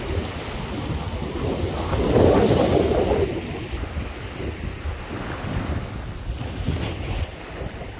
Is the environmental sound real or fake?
real